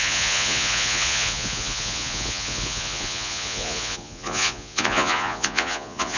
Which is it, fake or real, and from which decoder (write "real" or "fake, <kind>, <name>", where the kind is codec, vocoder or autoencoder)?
fake, vocoder, Vocos